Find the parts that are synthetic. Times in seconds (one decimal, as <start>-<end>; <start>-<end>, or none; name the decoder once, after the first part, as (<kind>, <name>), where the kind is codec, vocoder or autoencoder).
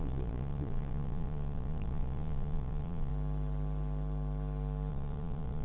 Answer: 0.0-3.1 (vocoder, Vocos); 4.9-5.6